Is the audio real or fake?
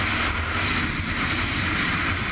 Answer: real